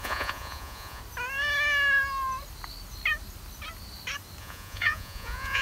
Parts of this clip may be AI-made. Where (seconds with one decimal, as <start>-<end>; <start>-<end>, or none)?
0.0-1.0; 4.4-5.6